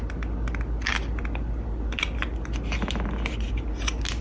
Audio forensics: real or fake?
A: real